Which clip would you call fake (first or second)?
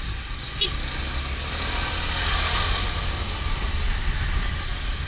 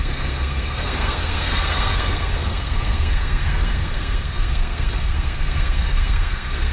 second